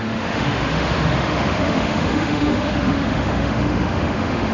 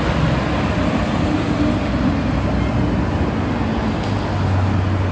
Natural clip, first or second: second